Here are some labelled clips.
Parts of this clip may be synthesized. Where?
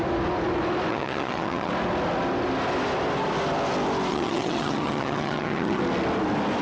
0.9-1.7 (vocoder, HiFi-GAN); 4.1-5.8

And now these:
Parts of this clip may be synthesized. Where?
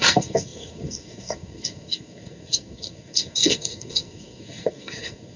0.0-5.4 (codec, SNAC)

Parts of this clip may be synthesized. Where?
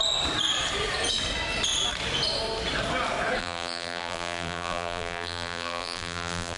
3.4-6.6 (vocoder, BigVGAN v2)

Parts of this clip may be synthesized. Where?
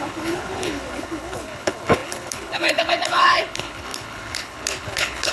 0.0-5.3 (codec, HILCodec)